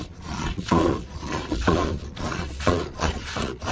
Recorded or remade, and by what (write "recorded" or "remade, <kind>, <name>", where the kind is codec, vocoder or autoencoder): remade, vocoder, Vocos